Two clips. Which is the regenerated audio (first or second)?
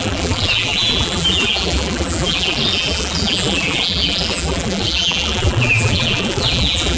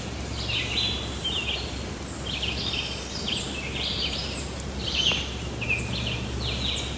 first